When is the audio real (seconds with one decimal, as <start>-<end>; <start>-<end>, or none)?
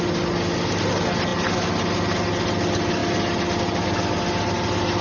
0.0-5.0